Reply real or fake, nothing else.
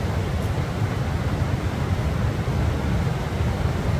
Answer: real